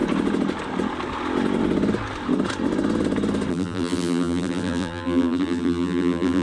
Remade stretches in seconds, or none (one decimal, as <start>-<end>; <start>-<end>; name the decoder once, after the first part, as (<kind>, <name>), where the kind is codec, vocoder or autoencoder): 3.5-6.4 (vocoder, BigVGAN v2)